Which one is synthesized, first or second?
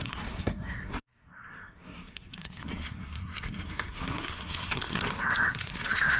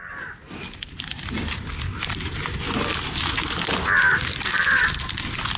first